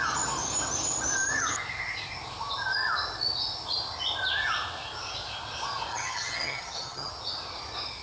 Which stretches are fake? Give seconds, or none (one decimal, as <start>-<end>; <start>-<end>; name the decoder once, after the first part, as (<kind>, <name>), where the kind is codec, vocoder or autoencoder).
5.9-7.1 (vocoder, HiFi-GAN)